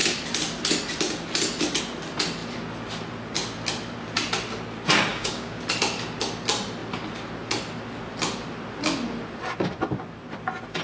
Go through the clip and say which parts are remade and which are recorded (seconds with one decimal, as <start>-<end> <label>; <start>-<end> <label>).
0.0-5.1 recorded; 5.1-5.6 remade; 5.6-10.8 recorded